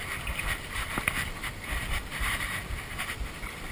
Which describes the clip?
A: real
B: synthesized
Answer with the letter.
A